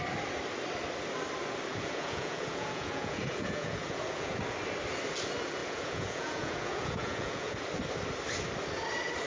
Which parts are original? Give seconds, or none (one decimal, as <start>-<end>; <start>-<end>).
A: 0.0-1.7; 4.4-5.6; 7.6-9.3